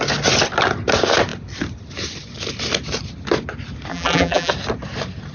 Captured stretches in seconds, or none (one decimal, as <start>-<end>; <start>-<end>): 0.0-3.9; 4.5-5.3